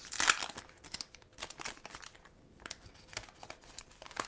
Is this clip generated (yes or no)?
no